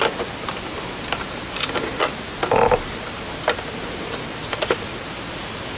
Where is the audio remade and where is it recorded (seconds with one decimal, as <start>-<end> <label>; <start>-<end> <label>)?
0.0-5.8 recorded